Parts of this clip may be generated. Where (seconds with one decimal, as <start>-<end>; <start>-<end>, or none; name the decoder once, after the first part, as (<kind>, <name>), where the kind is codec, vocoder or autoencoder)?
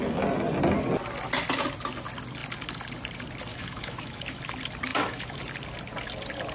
3.5-4.4 (autoencoder, DAC-VAE); 4.9-5.4